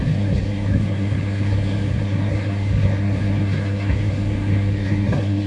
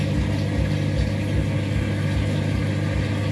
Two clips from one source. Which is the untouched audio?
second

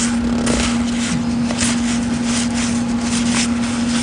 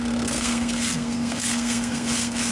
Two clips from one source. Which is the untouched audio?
first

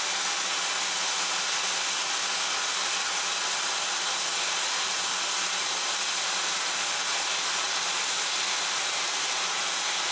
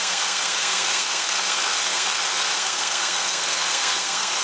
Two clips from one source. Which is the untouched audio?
first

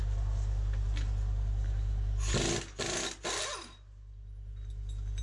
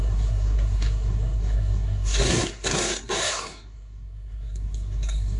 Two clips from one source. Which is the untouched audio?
first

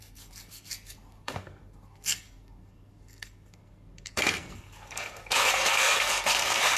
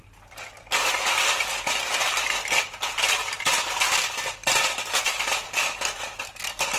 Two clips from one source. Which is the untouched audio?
second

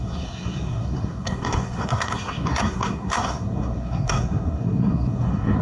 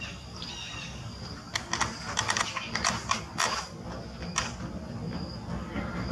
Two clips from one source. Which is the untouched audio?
second